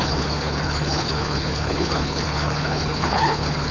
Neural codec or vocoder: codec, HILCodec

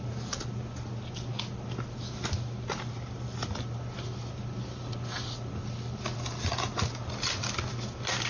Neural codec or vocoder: none